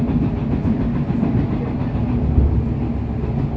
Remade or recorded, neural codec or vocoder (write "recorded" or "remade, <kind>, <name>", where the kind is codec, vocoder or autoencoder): recorded